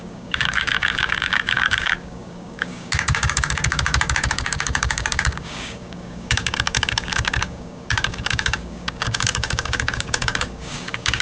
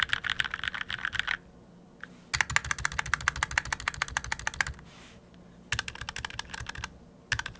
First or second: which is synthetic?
first